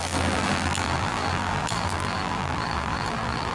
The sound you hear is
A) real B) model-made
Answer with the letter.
B